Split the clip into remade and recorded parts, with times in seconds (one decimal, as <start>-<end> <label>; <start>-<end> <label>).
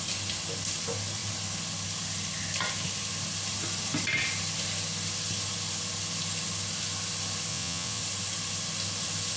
0.0-7.5 recorded; 7.5-8.0 remade; 8.0-9.4 recorded